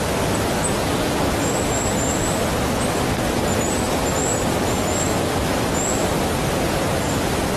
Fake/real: real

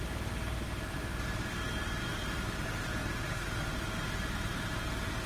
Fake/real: fake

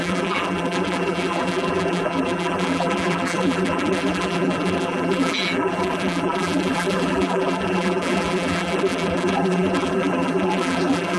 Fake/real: fake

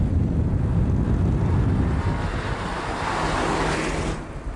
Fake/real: real